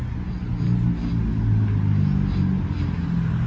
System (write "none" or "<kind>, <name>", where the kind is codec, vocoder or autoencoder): none